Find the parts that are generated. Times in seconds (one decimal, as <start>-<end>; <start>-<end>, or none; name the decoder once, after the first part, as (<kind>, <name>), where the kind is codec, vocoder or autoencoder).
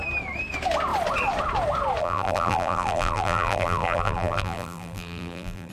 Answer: 2.0-5.7 (vocoder, BigVGAN v2)